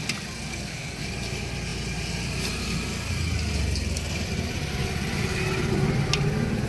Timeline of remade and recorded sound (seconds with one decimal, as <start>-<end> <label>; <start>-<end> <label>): 0.0-0.5 recorded; 0.5-1.0 remade; 1.0-6.7 recorded